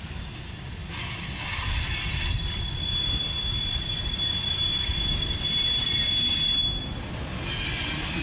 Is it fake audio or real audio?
real